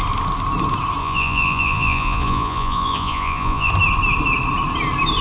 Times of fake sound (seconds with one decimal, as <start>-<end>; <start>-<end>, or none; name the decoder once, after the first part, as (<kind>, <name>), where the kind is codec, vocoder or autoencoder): 1.0-3.7 (vocoder, Vocos)